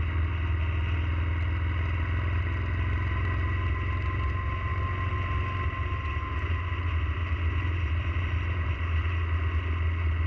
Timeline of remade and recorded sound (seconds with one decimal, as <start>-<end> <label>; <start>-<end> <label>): 0.0-10.3 recorded